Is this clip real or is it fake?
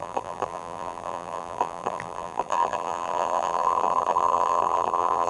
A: fake